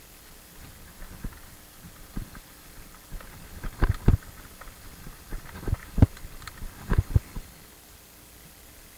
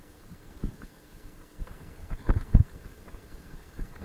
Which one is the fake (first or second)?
second